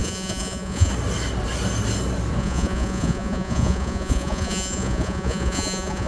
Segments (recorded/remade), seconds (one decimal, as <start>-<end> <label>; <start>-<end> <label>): 0.0-0.9 remade; 0.9-2.4 recorded; 2.4-6.1 remade